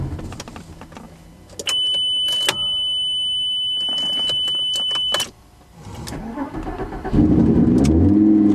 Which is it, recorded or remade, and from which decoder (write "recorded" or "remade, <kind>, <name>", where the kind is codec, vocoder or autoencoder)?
recorded